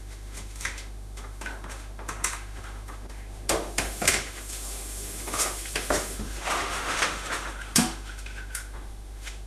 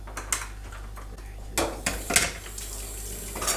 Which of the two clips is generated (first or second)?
first